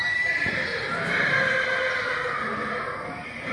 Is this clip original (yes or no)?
yes